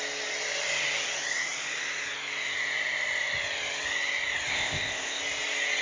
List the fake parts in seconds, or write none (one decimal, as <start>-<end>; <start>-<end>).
4.5-5.2